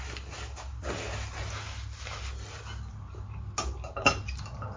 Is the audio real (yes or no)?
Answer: yes